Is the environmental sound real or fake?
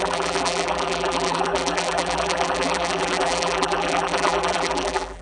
fake